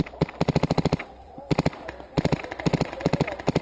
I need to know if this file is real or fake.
fake